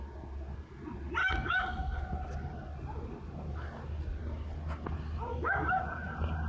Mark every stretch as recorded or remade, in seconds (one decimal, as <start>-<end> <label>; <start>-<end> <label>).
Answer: 0.0-1.2 recorded; 1.2-2.0 remade; 2.0-5.3 recorded; 5.3-5.8 remade; 5.8-6.5 recorded